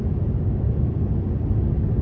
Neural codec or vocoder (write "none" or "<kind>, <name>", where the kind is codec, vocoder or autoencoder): none